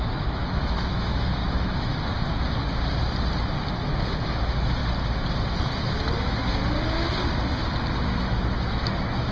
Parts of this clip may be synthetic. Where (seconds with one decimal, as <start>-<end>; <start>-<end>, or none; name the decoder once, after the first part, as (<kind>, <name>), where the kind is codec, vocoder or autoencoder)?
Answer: 0.0-2.1 (autoencoder, DAC-VAE); 4.2-4.8; 6.1-6.6; 8.0-9.3